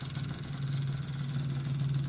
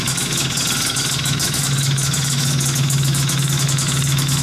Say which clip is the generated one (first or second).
second